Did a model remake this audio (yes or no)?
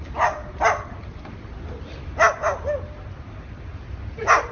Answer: no